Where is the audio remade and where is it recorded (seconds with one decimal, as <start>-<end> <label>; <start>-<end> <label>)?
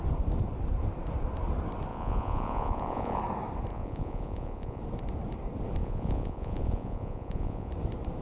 0.0-1.9 recorded; 1.9-3.2 remade; 3.2-3.7 recorded; 3.7-4.8 remade; 4.8-5.8 recorded; 5.8-7.7 remade; 7.7-8.2 recorded